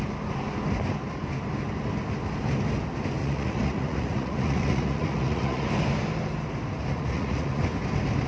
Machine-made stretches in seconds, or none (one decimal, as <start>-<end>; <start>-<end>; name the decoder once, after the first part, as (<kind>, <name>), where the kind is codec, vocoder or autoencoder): 3.2-5.7 (vocoder, Vocos); 6.9-7.6

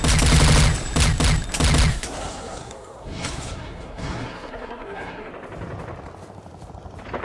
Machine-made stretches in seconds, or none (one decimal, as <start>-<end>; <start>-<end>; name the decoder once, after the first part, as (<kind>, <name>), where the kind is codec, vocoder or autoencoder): 1.9-5.3 (codec, SNAC)

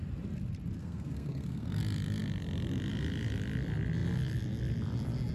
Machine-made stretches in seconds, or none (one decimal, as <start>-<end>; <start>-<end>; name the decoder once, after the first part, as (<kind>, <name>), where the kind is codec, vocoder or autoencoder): 0.8-1.8 (codec, SNAC)

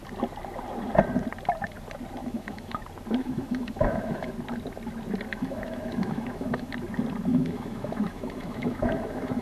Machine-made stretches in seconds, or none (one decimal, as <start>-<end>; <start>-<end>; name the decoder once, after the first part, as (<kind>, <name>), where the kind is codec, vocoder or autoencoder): 2.2-2.8 (autoencoder, DAC-VAE); 3.2-4.3; 5.3-6.7; 7.3-9.4